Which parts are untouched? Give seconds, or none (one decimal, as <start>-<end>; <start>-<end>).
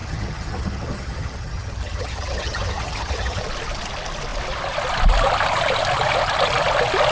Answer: 3.4-7.1